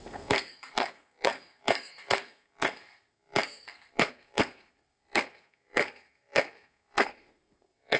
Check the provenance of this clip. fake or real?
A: fake